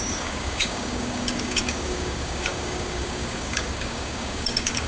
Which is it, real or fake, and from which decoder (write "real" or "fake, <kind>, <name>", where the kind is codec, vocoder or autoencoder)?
fake, codec, DAC